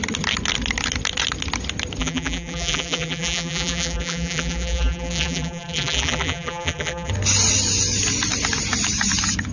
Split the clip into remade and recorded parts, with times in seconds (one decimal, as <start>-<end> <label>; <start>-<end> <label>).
0.0-2.0 recorded; 2.0-7.1 remade; 7.1-9.5 recorded